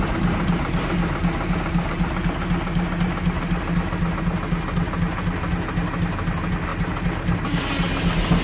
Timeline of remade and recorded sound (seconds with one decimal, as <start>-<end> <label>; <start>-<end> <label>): 0.0-8.4 recorded